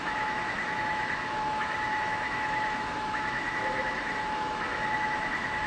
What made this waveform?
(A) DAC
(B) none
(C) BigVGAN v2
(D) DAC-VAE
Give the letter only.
D